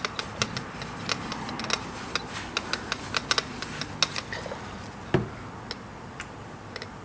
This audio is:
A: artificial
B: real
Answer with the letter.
B